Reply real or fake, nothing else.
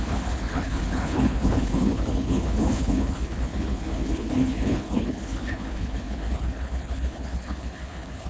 fake